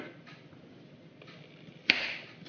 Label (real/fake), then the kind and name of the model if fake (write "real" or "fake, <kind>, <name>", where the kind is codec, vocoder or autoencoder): real